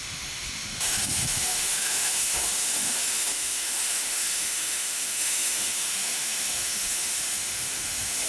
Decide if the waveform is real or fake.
fake